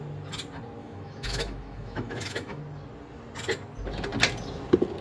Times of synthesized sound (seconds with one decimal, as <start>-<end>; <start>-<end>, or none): 0.8-2.6